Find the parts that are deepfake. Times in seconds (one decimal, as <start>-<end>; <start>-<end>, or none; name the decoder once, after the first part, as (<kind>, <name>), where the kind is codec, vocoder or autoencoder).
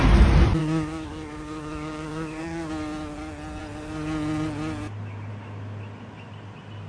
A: 0.6-2.7 (codec, DAC)